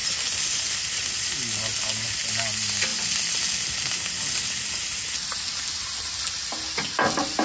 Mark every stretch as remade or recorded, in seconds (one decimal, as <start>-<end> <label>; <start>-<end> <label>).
0.0-7.4 recorded